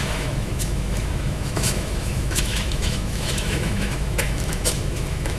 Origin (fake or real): fake